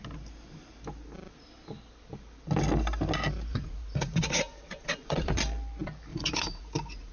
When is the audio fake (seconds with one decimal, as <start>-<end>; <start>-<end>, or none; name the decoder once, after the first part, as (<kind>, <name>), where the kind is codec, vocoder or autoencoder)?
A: 3.5-5.4 (vocoder, Vocos); 6.1-7.1